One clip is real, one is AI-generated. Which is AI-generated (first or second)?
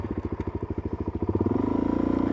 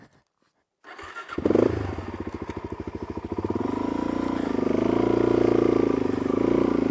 first